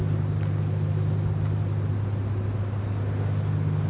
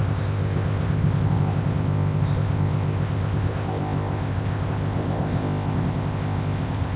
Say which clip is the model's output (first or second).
second